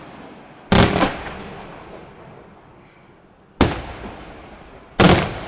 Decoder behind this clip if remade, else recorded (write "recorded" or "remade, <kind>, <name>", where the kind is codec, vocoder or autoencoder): recorded